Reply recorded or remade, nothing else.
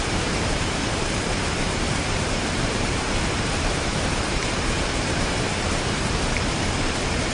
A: remade